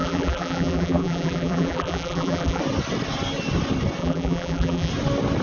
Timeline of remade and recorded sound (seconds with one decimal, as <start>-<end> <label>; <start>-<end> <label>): 0.0-2.6 remade; 2.6-4.0 recorded; 4.0-4.9 remade; 4.9-5.4 recorded